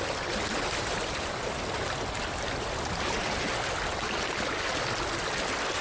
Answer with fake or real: real